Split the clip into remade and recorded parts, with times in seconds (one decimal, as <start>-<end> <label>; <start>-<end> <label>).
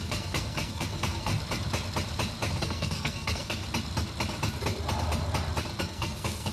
0.0-1.3 remade; 1.3-2.6 recorded; 2.6-3.6 remade; 3.6-5.8 recorded; 5.8-6.5 remade